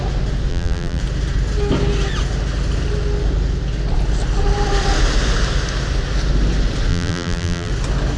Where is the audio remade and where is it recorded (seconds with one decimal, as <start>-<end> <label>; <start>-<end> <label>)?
0.0-0.5 recorded; 0.5-1.0 remade; 1.0-6.9 recorded; 6.9-7.7 remade; 7.7-8.2 recorded